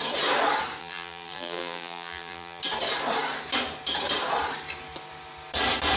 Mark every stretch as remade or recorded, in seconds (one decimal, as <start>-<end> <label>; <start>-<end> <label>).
0.0-0.8 recorded; 0.8-2.6 remade; 2.6-6.0 recorded